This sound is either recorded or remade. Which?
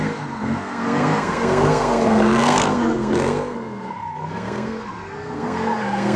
remade